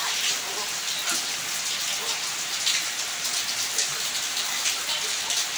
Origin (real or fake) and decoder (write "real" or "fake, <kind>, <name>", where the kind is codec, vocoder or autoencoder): real